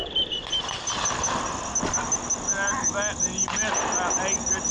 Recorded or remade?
recorded